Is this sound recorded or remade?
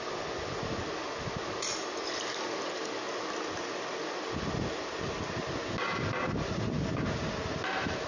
recorded